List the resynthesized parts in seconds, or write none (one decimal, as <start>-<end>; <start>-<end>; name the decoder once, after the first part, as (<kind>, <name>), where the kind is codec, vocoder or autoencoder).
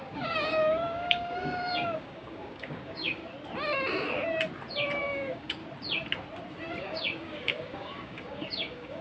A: 0.0-3.2 (codec, DAC); 5.0-5.6; 6.8-9.0